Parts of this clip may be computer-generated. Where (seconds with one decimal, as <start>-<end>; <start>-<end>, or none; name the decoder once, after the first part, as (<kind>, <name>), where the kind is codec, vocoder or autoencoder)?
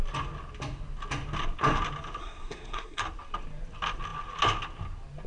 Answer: 2.2-3.0 (codec, SNAC)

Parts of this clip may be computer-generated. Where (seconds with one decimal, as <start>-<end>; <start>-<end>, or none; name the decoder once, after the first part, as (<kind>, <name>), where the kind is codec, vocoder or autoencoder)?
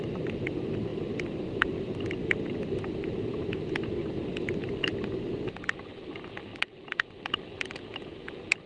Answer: none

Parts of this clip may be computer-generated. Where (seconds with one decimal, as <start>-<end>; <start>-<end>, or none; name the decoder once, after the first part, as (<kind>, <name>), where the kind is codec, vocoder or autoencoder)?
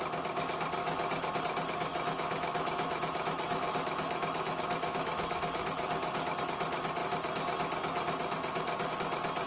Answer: 0.8-1.4 (autoencoder, DAC-VAE); 1.9-6.4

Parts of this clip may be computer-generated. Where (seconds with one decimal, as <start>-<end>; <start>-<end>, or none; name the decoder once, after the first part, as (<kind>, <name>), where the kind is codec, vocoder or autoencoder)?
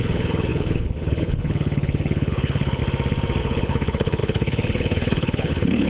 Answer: 0.0-2.8 (codec, HILCodec); 3.4-5.9